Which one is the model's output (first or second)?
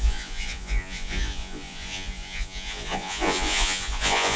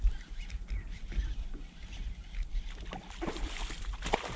first